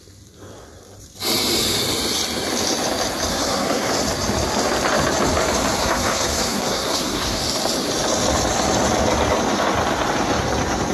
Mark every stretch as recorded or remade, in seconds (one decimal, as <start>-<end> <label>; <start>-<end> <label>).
0.0-3.3 recorded; 3.3-3.9 remade; 3.9-5.8 recorded; 5.8-7.4 remade; 7.4-10.9 recorded